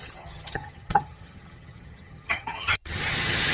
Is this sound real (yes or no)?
no